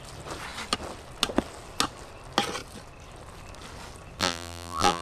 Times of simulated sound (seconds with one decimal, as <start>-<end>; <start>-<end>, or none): 4.2-5.0